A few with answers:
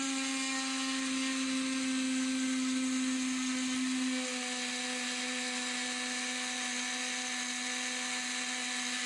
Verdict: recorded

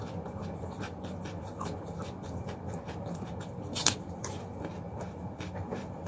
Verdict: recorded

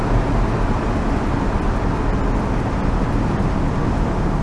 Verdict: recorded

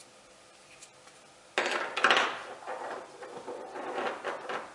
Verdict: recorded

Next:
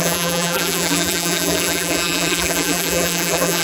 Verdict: remade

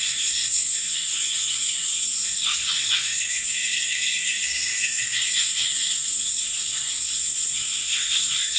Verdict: remade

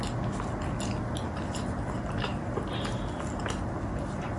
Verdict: recorded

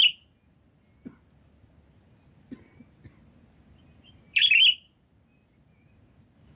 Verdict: recorded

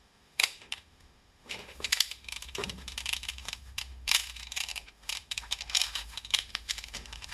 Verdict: remade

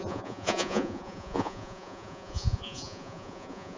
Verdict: remade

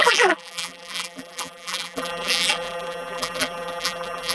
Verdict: remade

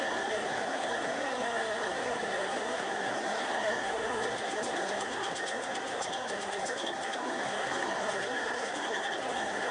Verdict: remade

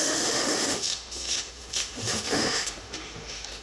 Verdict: remade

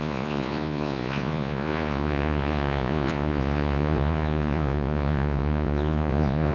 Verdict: remade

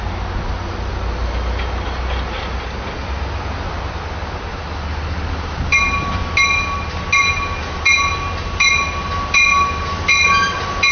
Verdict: recorded